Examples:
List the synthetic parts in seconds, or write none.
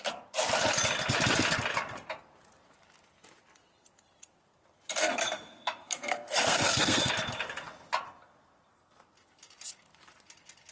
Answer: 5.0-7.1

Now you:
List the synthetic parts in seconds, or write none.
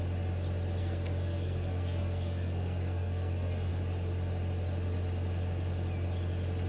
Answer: 0.8-3.7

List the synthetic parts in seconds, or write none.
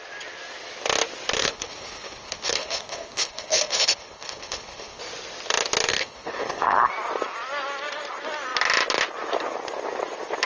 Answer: 1.4-5.0; 5.9-6.9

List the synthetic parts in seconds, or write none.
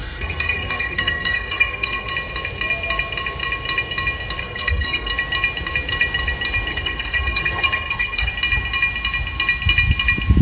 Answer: 0.0-2.1; 4.4-5.1; 6.7-8.3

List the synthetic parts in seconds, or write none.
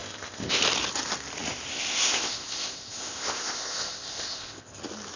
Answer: 0.0-0.6; 1.7-4.8